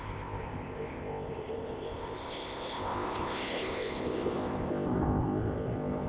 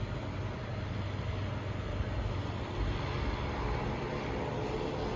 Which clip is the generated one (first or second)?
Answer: first